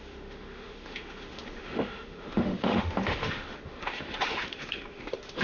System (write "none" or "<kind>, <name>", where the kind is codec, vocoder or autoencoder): autoencoder, DAC-VAE